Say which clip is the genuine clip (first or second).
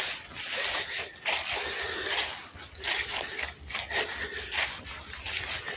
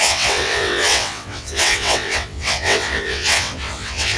first